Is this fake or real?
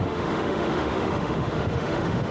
fake